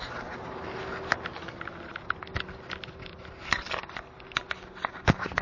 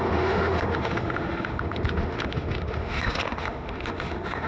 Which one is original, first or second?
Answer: first